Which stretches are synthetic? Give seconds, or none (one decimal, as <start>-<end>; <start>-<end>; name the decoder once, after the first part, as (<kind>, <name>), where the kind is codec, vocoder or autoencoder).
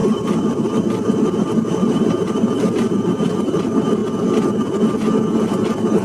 0.0-4.0 (vocoder, BigVGAN v2); 5.4-6.0